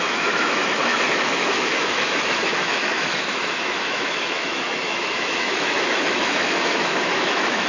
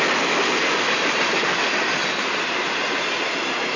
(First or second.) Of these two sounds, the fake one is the first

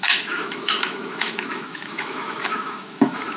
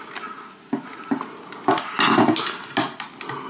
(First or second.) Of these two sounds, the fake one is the first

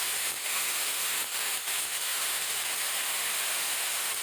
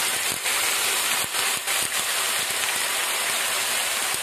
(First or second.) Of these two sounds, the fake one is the first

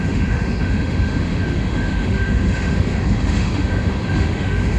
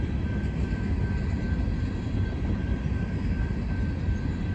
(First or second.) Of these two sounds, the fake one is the first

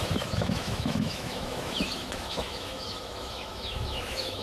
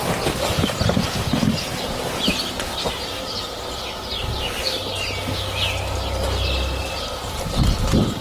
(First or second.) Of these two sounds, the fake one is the first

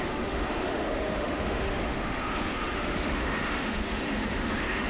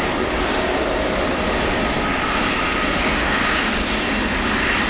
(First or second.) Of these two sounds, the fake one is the first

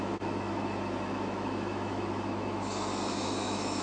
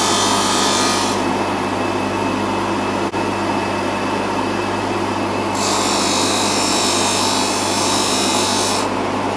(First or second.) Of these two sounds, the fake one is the first